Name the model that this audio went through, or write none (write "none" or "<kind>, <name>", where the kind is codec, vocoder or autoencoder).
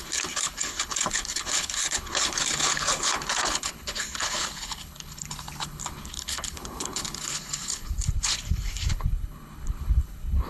codec, HILCodec